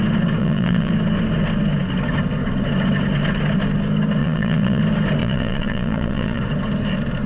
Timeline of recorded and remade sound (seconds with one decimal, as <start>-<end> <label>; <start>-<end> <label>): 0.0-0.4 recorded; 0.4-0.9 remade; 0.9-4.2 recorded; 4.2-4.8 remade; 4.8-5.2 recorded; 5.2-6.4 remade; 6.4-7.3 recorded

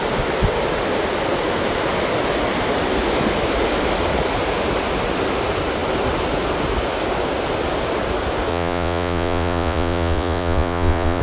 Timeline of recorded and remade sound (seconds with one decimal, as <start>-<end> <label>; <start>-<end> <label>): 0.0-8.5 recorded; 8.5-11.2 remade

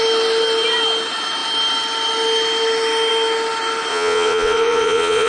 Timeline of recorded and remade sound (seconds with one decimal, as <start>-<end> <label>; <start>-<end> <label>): 0.0-3.9 recorded; 3.9-5.3 remade

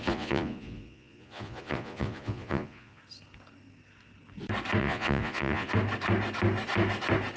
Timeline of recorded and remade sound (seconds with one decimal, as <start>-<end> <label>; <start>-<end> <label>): 0.0-3.0 remade; 3.0-4.8 recorded; 4.8-5.7 remade; 5.7-7.4 recorded